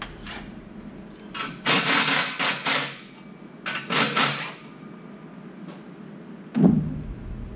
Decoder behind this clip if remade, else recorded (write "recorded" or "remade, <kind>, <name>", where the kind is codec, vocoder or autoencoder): recorded